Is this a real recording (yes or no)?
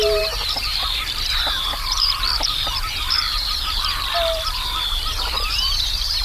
no